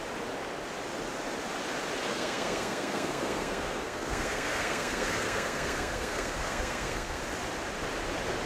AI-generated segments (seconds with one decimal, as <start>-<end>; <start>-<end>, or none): 2.1-7.2